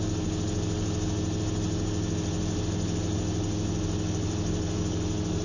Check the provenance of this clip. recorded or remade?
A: recorded